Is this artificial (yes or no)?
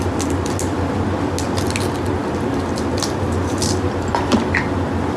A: no